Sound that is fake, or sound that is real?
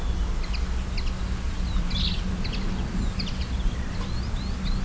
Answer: real